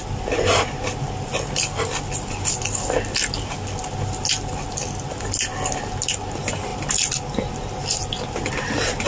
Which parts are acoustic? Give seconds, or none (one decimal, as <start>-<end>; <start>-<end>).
0.0-9.1